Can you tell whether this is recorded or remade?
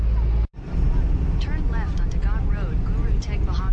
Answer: recorded